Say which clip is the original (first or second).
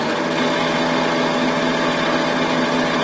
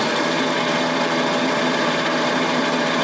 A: first